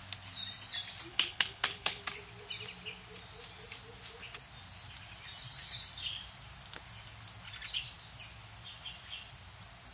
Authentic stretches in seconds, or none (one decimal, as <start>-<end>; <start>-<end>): 0.0-1.1; 2.0-9.9